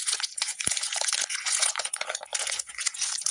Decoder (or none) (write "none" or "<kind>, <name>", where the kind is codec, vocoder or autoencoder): vocoder, Vocos